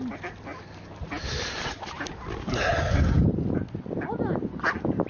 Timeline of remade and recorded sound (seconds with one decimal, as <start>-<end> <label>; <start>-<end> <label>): 0.0-5.1 recorded